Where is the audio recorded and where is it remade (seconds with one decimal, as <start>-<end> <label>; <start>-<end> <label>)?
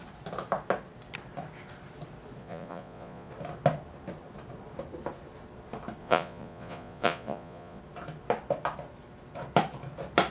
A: 0.0-2.4 recorded; 2.4-3.3 remade; 3.3-6.0 recorded; 6.0-7.8 remade; 7.8-10.3 recorded